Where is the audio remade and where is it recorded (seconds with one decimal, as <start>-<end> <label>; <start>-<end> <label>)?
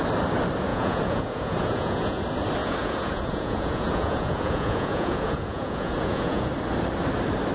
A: 0.0-0.7 recorded; 0.7-2.2 remade; 2.2-2.6 recorded; 2.6-6.5 remade; 6.5-7.5 recorded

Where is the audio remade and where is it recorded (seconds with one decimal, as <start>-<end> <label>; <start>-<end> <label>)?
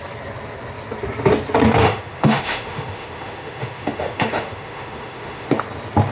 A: 0.0-1.8 recorded; 1.8-5.5 remade; 5.5-6.1 recorded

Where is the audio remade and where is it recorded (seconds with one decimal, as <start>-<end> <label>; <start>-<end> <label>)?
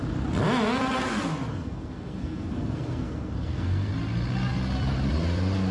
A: 0.0-1.5 recorded; 1.5-3.9 remade; 3.9-5.7 recorded